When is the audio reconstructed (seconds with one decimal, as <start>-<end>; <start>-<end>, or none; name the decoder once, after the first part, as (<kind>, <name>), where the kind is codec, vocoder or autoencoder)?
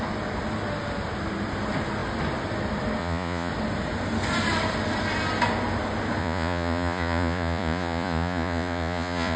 3.0-3.5 (vocoder, Vocos); 6.2-9.4